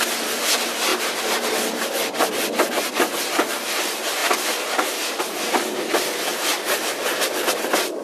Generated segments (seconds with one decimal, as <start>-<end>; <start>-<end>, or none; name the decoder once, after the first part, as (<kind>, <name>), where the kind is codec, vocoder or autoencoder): none